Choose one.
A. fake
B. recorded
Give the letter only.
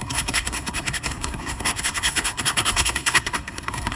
A